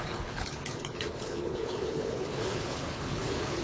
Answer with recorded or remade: remade